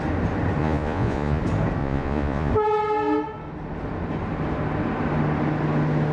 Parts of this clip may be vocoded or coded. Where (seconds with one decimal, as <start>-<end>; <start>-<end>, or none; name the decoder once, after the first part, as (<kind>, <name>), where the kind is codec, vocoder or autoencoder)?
0.6-1.4 (vocoder, Vocos); 1.8-2.5